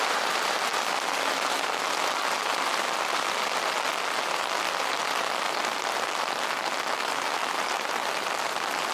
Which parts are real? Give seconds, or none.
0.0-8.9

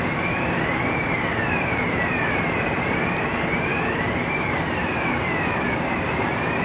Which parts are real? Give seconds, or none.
0.0-1.4; 3.0-3.7

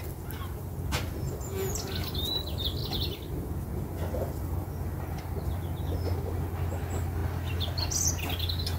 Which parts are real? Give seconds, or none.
0.0-8.8

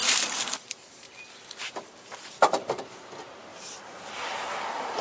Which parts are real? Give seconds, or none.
3.0-3.5

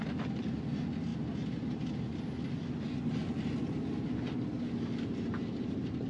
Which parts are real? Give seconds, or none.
0.0-6.1

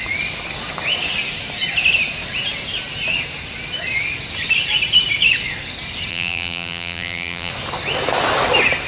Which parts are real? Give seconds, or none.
0.0-6.1; 7.5-8.9

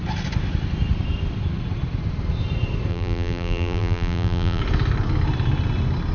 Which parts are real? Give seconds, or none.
0.0-2.9; 4.6-6.1